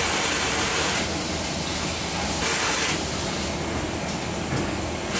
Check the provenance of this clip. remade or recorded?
recorded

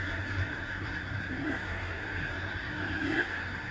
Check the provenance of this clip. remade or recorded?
remade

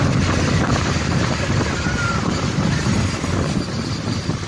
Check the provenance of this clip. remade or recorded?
recorded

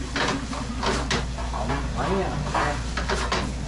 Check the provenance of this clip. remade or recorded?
recorded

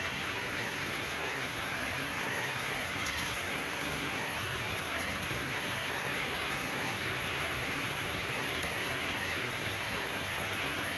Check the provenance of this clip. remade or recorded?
remade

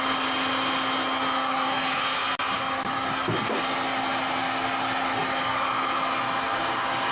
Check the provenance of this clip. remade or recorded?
recorded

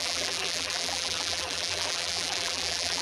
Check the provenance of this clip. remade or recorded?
remade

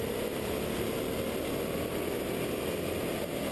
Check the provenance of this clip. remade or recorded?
recorded